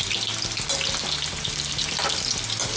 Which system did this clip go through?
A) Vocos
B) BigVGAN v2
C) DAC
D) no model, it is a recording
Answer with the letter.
D